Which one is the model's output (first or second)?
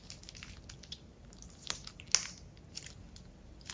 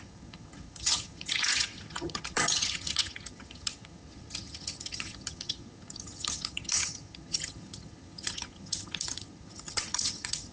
second